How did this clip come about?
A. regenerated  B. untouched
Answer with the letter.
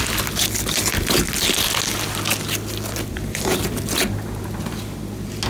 B